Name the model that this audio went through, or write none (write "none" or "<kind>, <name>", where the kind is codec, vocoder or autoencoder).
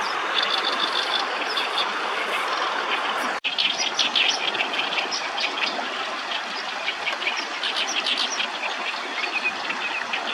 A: none